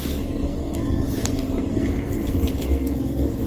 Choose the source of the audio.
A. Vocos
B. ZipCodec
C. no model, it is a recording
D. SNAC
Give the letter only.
D